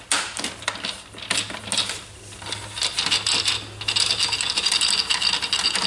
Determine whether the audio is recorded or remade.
recorded